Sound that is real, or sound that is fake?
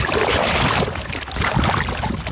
real